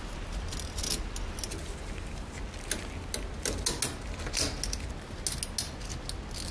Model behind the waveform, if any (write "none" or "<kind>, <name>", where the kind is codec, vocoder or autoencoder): none